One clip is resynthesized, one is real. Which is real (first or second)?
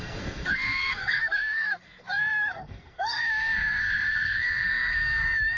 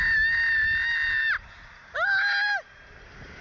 second